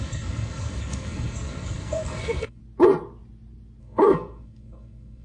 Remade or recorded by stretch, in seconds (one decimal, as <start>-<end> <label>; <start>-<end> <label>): 0.0-2.6 remade; 2.6-3.8 recorded; 3.8-5.2 remade